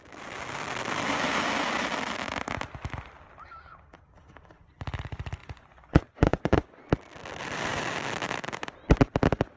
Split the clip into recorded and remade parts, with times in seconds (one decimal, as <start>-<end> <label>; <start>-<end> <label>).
0.0-5.4 recorded; 5.4-6.8 remade; 6.8-9.6 recorded